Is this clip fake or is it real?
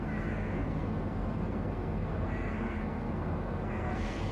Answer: fake